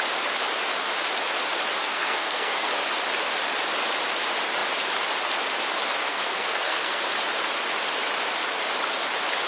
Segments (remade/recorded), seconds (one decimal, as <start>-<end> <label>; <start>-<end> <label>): 0.0-1.8 recorded; 1.8-2.7 remade; 2.7-6.1 recorded; 6.1-7.0 remade; 7.0-9.5 recorded